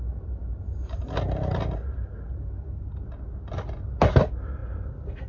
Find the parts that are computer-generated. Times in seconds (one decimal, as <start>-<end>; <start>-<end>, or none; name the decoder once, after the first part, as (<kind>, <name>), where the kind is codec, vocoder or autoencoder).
4.6-5.3 (vocoder, BigVGAN v2)